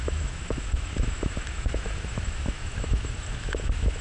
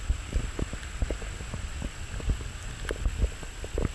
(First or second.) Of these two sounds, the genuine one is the second